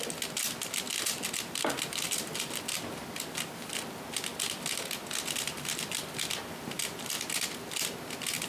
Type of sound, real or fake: real